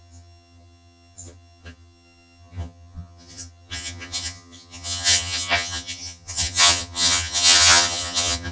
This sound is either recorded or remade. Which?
remade